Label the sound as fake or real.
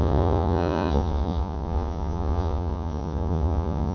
fake